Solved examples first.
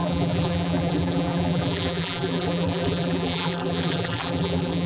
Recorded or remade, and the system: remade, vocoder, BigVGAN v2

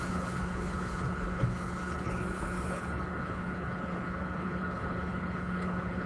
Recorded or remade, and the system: remade, codec, HILCodec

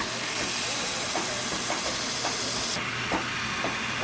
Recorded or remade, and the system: recorded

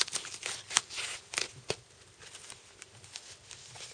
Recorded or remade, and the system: recorded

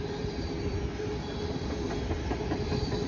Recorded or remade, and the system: recorded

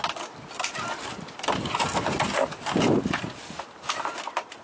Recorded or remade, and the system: recorded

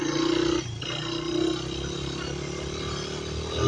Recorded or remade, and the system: recorded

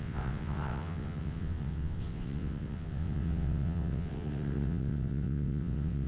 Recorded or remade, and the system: remade, vocoder, WaveNeXt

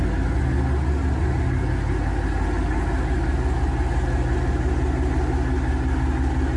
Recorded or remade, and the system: recorded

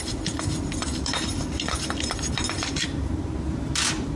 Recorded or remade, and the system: recorded